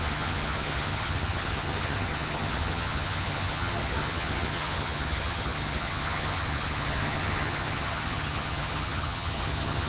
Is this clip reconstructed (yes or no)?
yes